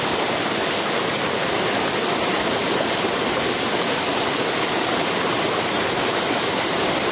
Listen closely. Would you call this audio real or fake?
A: real